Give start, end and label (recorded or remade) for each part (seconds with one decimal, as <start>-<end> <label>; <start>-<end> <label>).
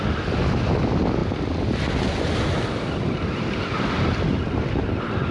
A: 0.0-5.3 recorded